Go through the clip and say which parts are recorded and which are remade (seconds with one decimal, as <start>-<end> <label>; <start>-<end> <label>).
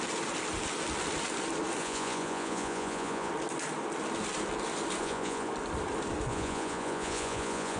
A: 0.0-1.8 recorded; 1.8-3.3 remade; 3.3-5.0 recorded; 5.0-5.5 remade; 5.5-6.3 recorded; 6.3-7.8 remade